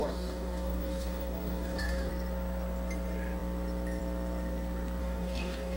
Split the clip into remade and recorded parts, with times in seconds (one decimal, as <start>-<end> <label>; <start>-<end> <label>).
0.0-2.1 remade; 2.1-5.0 recorded; 5.0-5.8 remade